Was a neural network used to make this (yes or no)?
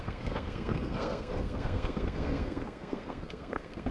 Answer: yes